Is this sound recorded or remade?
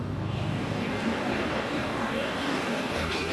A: remade